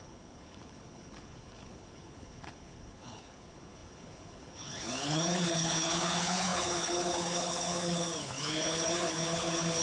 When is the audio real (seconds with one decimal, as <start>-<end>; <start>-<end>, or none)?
none